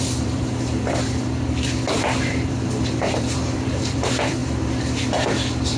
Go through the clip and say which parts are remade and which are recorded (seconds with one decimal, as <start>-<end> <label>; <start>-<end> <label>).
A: 0.0-4.4 remade; 4.4-5.8 recorded